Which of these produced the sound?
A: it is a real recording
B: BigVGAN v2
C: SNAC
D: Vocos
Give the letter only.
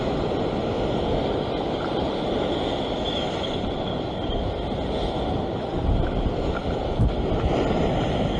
A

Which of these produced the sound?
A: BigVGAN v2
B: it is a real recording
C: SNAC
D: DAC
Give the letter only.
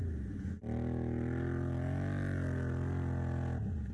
B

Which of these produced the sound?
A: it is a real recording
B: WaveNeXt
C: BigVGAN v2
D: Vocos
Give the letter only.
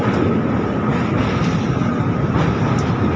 C